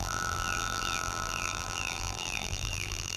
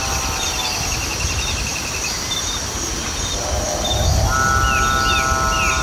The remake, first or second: first